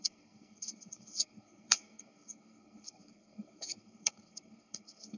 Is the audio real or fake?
fake